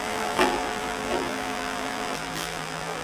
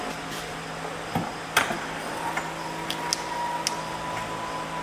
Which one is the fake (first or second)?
first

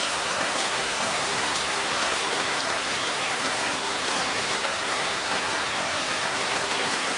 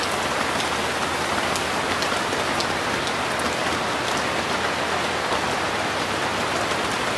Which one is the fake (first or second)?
first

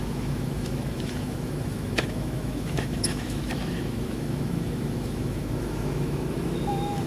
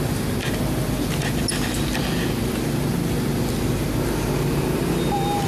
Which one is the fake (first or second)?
first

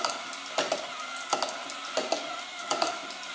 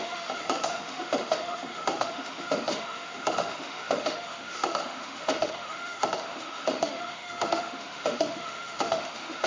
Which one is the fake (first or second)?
second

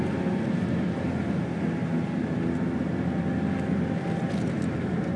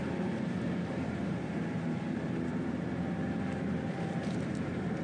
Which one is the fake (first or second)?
second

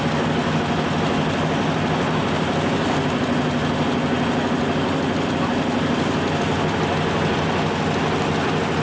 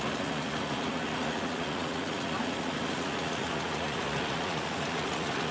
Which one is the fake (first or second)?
second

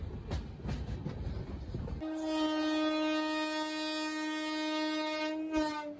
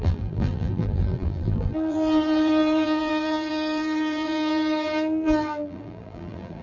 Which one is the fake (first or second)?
second